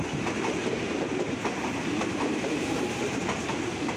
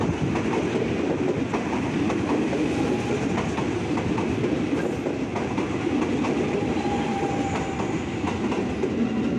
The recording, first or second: second